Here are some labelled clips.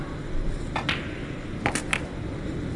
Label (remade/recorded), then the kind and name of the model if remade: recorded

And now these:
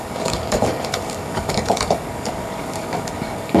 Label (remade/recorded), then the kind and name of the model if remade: remade, codec, DAC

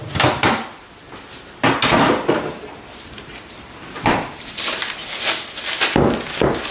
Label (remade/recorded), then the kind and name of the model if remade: remade, vocoder, BigVGAN v2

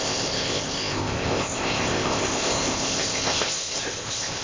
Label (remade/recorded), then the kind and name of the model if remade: remade, codec, ZipCodec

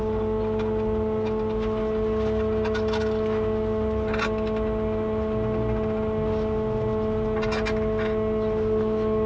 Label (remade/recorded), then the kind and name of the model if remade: recorded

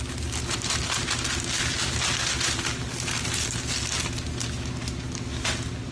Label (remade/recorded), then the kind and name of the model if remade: recorded